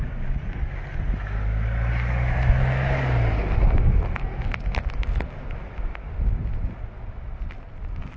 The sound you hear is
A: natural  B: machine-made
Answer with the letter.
A